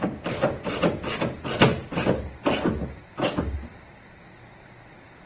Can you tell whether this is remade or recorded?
recorded